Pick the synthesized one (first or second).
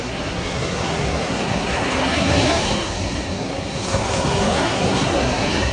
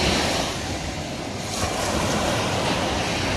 first